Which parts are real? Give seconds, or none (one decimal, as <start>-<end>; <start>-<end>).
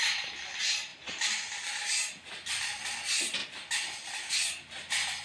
0.0-5.2